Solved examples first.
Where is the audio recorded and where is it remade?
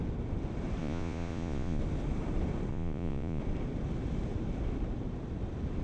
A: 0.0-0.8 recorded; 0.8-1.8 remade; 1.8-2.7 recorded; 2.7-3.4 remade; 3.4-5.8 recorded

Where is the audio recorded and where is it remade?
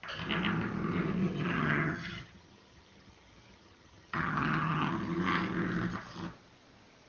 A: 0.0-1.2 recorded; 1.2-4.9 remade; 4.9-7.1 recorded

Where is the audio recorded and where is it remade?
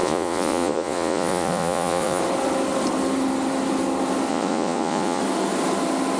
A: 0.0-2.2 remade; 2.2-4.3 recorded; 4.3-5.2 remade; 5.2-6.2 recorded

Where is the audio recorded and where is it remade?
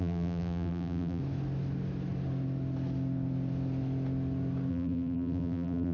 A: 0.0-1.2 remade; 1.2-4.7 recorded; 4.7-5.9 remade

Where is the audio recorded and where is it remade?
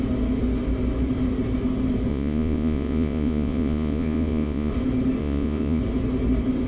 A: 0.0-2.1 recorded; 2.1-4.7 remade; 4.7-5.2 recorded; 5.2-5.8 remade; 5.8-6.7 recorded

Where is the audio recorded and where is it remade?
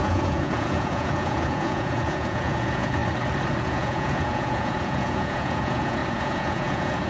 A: 0.0-3.0 remade; 3.0-3.6 recorded; 3.6-7.1 remade